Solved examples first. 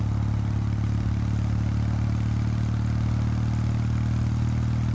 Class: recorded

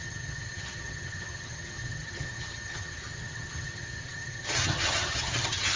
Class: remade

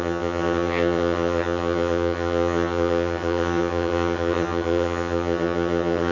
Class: remade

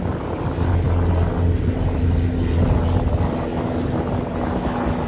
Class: recorded